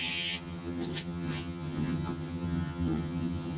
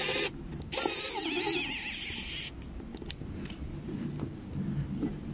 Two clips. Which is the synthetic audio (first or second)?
first